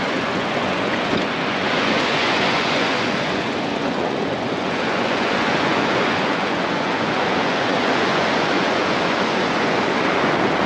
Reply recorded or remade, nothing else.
remade